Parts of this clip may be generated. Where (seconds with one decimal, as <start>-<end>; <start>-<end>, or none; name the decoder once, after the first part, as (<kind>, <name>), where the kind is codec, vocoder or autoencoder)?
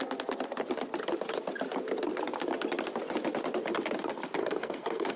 4.4-5.2 (codec, SNAC)